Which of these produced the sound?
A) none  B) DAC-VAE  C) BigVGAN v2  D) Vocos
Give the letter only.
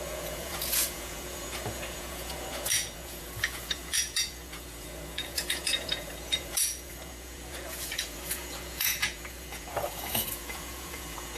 D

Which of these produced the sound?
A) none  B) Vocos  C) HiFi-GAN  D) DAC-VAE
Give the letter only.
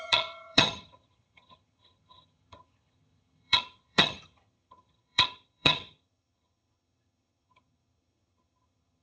C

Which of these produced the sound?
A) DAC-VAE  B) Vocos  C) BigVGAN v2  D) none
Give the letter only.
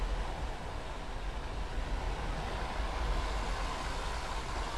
D